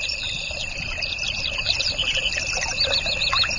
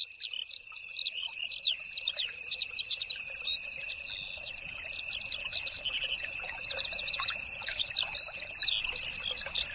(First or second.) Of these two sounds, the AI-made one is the first